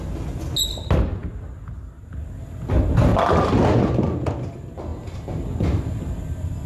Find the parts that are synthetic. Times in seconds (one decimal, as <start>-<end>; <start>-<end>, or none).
none